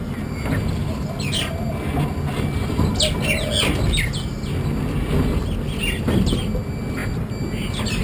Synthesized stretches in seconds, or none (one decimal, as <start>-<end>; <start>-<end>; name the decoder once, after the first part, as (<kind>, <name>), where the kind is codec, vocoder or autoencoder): none